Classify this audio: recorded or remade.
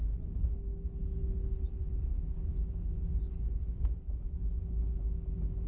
recorded